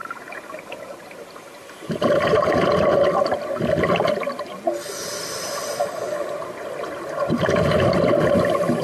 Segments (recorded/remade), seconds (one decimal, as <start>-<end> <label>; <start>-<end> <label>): 0.0-2.5 remade; 2.5-8.8 recorded